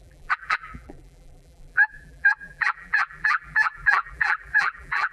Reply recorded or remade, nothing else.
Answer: remade